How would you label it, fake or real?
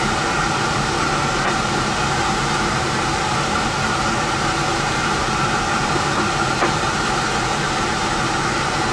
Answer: fake